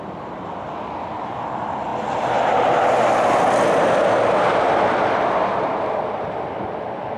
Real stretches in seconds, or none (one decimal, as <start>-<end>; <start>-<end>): 0.0-7.2